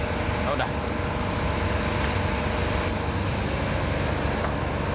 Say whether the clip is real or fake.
real